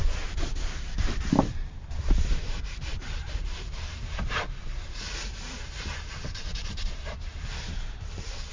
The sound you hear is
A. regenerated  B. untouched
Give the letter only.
A